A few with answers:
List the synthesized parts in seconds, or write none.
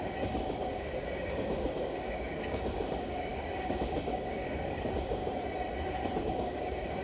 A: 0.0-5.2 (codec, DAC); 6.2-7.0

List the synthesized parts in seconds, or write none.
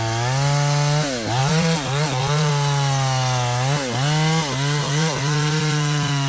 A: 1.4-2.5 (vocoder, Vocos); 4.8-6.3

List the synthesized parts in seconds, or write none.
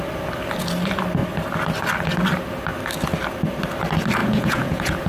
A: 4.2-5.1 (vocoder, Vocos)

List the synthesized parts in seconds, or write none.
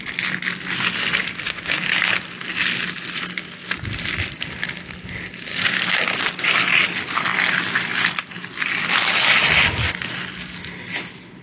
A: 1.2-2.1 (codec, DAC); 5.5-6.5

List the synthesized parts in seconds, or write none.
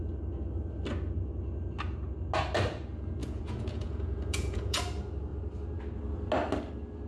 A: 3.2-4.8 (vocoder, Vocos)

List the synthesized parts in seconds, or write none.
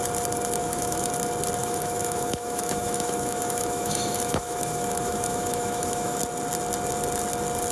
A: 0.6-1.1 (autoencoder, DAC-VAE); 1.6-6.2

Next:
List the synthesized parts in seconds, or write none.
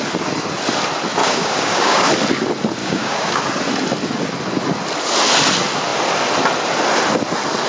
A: 1.2-2.1 (codec, DAC); 2.8-3.4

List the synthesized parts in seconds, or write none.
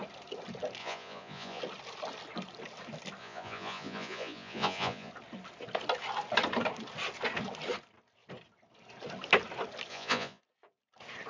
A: 0.8-1.6 (vocoder, Vocos); 3.2-5.1; 9.9-10.4